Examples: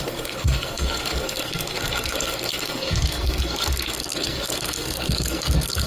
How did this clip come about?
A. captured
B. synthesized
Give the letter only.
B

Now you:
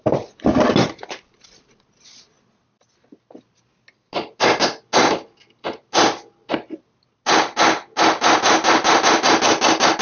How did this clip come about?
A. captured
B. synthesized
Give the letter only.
A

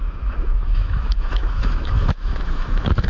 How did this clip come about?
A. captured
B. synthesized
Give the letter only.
B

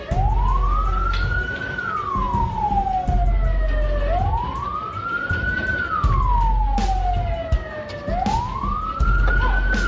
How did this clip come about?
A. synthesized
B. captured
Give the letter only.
B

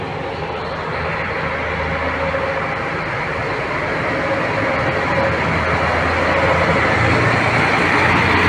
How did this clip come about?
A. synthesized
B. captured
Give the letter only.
B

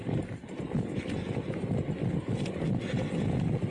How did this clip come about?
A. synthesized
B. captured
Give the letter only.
B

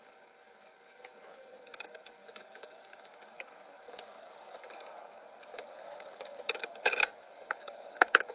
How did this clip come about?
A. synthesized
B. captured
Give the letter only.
A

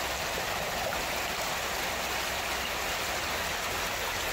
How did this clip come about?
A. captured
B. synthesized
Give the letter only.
A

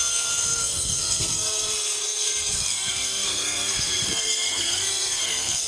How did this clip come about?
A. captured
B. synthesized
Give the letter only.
B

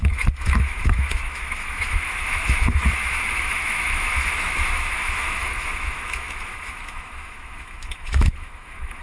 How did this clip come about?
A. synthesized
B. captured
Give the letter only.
A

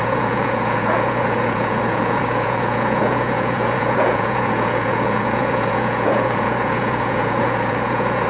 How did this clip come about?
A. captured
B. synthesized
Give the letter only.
B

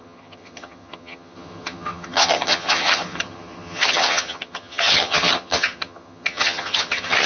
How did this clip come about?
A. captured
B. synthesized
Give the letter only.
B